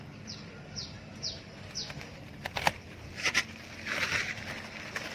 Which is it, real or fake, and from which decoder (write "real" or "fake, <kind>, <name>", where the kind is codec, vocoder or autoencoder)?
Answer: real